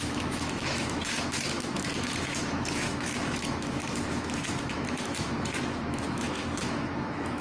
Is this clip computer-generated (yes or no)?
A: yes